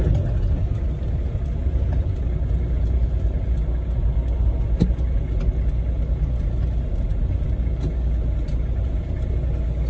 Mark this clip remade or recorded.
recorded